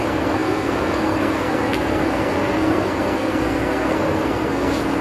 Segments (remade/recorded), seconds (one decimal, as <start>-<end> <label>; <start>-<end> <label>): 0.0-5.0 remade